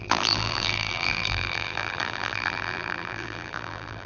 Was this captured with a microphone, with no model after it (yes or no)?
no